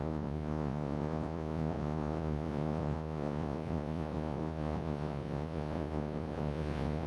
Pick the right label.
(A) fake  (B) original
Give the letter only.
A